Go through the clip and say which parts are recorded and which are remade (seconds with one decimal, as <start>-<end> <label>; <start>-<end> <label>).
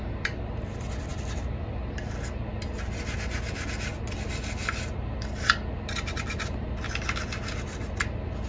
0.0-8.5 recorded